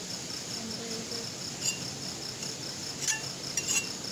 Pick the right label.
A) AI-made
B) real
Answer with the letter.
B